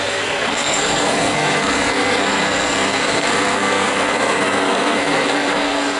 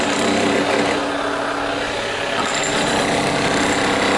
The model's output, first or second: first